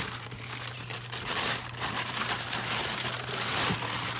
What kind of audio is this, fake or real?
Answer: fake